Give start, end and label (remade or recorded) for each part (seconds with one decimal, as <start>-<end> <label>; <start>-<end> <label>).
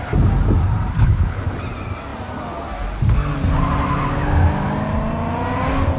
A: 0.0-0.9 recorded; 0.9-1.5 remade; 1.5-6.0 recorded